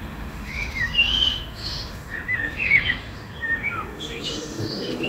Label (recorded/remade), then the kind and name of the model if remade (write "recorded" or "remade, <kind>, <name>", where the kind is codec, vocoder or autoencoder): remade, autoencoder, DAC-VAE